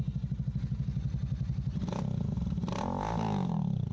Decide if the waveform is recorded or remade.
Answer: recorded